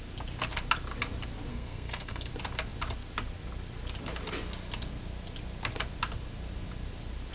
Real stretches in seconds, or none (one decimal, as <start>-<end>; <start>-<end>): 0.0-1.5; 2.3-7.3